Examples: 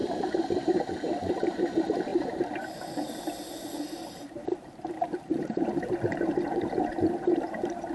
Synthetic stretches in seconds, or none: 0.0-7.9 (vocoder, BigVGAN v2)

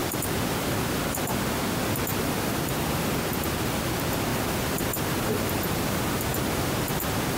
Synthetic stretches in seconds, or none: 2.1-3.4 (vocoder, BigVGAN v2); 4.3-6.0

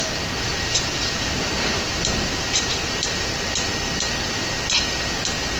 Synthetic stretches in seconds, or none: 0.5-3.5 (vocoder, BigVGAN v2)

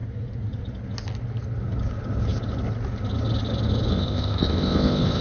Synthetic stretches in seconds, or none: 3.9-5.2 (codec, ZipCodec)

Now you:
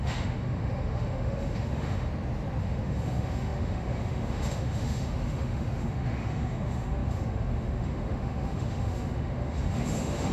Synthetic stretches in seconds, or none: 0.0-2.1 (autoencoder, DAC-VAE); 2.6-10.3

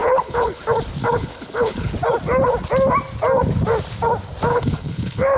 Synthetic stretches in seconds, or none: 0.0-0.6 (codec, HILCodec); 1.0-1.9; 4.5-5.4

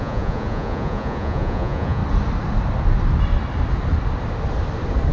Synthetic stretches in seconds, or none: 0.0-2.0 (vocoder, Vocos)

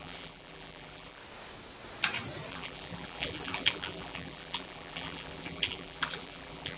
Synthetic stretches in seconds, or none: 0.0-1.2 (vocoder, BigVGAN v2); 2.5-6.8